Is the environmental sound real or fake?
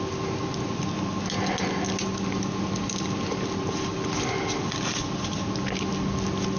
real